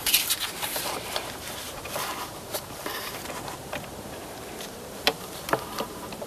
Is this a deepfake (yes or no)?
yes